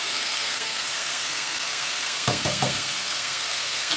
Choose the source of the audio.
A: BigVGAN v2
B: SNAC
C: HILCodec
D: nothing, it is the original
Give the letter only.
B